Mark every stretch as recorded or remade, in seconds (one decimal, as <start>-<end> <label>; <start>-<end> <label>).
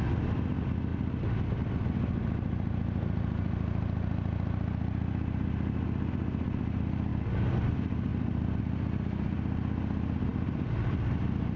0.0-7.1 recorded; 7.1-7.6 remade; 7.6-8.1 recorded; 8.1-8.6 remade; 8.6-10.3 recorded; 10.3-10.9 remade; 10.9-11.6 recorded